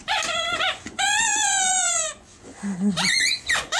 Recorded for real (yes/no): no